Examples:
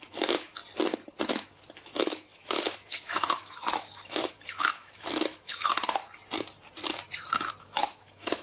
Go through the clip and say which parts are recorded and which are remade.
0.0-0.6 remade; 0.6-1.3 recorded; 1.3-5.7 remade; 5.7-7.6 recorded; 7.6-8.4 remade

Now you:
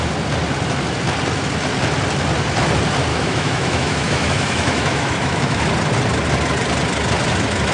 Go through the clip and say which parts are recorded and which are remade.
0.0-3.1 recorded; 3.1-5.6 remade; 5.6-7.7 recorded